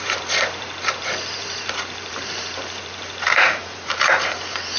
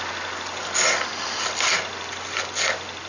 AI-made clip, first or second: first